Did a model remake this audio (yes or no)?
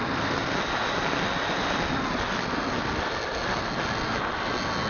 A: no